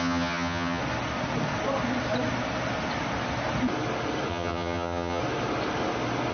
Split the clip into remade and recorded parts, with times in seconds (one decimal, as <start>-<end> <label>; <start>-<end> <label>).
0.0-0.8 remade; 0.8-4.3 recorded; 4.3-5.2 remade; 5.2-6.3 recorded